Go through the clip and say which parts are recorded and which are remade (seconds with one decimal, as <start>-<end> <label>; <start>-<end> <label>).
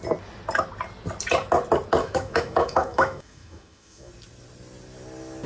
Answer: 0.0-2.0 recorded; 2.0-4.1 remade; 4.1-5.5 recorded